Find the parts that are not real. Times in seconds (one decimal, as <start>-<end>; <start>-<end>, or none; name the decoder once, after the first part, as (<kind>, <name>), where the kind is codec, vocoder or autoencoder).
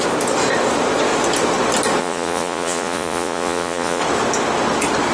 2.0-4.0 (vocoder, Vocos)